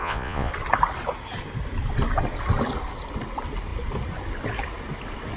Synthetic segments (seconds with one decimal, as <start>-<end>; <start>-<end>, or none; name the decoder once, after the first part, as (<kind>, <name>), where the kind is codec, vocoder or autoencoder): 0.0-0.5 (vocoder, Vocos)